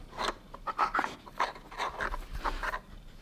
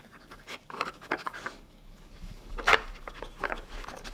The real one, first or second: first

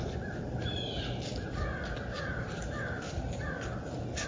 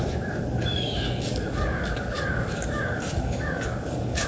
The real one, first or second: first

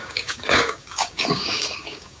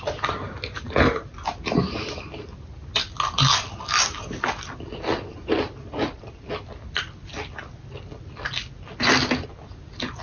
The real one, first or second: second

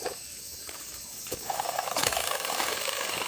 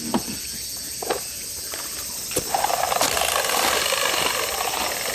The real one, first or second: second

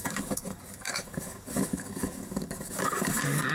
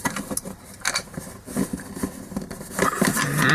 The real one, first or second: second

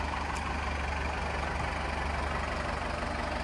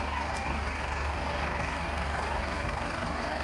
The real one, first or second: first